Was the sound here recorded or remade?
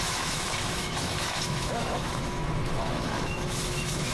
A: remade